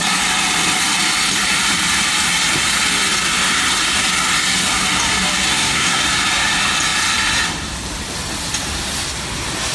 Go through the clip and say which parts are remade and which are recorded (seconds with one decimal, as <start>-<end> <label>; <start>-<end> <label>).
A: 0.0-5.5 recorded; 5.5-6.0 remade; 6.0-9.7 recorded